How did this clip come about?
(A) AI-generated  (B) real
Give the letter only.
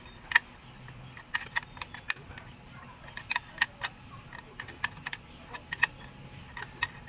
B